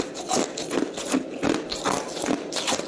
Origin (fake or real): real